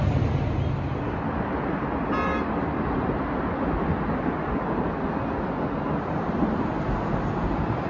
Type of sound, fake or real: real